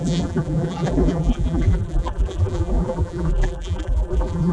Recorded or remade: remade